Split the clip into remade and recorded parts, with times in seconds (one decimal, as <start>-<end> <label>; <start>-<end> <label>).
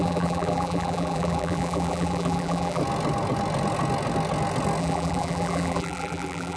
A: 0.0-2.8 remade; 2.8-4.8 recorded; 4.8-6.6 remade